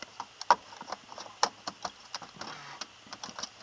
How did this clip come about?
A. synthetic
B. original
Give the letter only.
B